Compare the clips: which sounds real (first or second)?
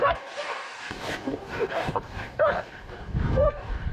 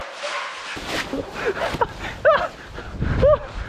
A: second